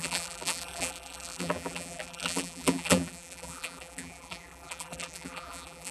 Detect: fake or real fake